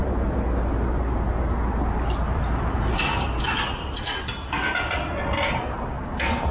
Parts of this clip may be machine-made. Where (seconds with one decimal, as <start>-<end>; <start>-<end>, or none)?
none

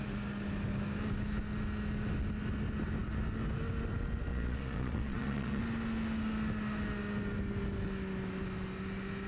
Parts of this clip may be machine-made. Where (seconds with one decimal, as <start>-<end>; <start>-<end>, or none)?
4.3-5.6